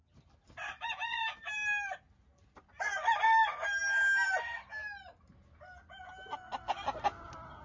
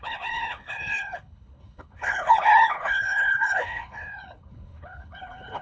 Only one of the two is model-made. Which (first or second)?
second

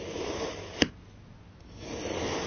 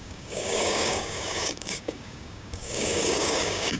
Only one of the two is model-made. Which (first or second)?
second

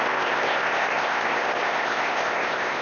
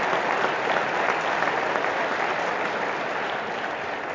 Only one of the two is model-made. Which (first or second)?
first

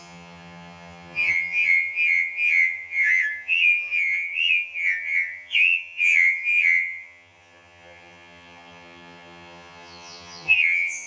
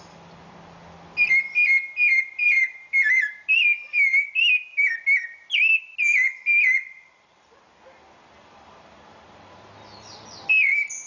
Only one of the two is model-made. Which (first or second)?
first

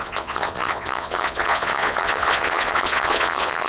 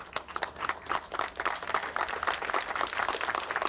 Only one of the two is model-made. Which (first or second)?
first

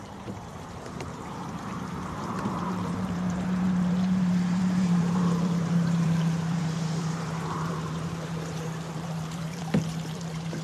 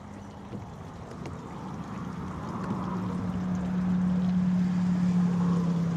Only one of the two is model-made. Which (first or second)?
first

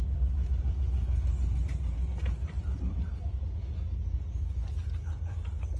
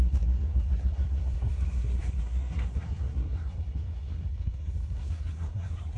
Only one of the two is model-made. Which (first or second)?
second